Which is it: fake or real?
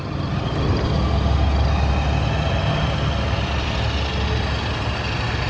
real